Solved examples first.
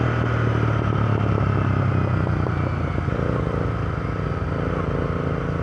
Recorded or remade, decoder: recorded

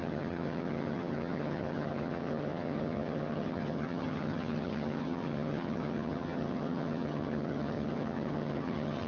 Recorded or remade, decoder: remade, vocoder, HiFi-GAN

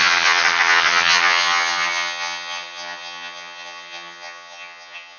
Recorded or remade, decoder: remade, vocoder, HiFi-GAN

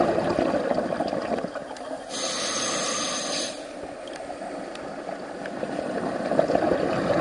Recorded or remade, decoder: recorded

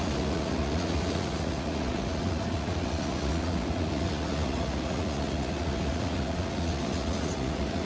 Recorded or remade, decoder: remade, vocoder, Vocos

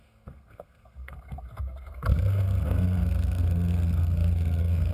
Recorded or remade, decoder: remade, codec, SNAC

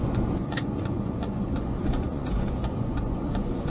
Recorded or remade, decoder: remade, vocoder, Vocos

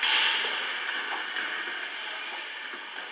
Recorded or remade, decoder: recorded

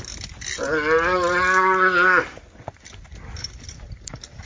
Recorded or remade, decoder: recorded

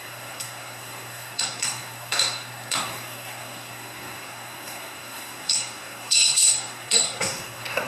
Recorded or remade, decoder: remade, codec, SNAC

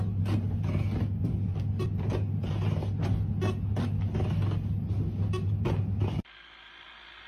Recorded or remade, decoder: recorded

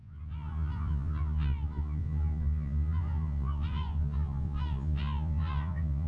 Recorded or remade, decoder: remade, vocoder, Vocos